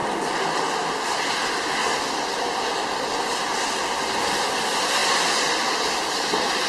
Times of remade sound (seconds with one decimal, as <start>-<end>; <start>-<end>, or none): none